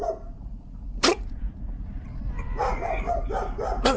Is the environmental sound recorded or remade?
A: remade